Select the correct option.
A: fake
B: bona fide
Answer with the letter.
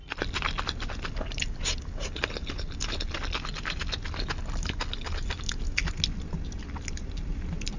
B